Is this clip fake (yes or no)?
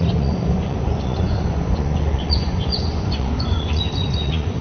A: yes